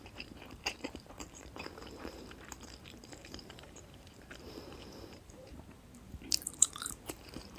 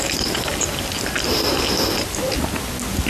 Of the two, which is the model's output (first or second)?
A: first